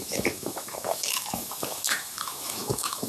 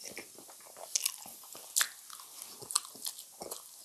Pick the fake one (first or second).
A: first